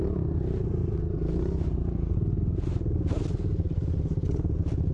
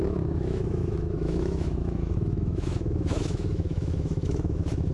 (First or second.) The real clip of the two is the first